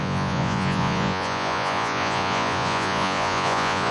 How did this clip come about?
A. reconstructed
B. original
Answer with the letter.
A